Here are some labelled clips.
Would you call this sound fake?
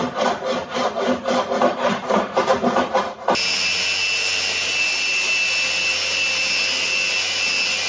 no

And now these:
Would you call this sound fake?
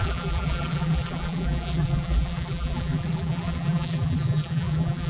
yes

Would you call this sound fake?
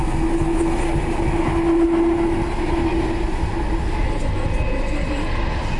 no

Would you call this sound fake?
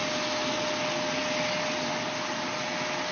no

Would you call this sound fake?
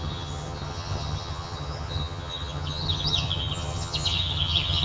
yes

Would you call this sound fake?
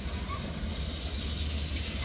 no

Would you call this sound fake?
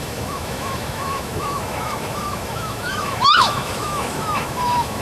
yes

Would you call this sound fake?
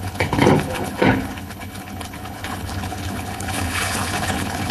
yes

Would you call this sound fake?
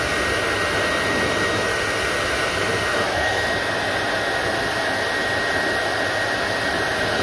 no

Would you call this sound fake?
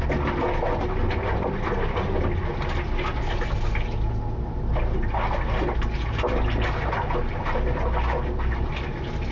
no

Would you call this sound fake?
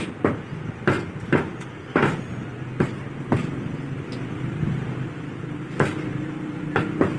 no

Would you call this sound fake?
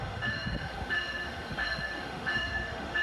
yes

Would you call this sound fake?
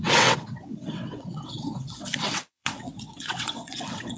yes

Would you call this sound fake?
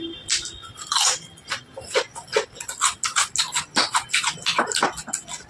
no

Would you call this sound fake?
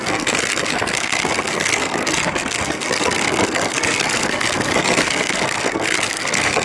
yes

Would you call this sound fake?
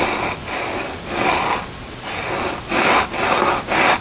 no